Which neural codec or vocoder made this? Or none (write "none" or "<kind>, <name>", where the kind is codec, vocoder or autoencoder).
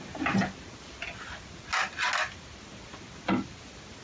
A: none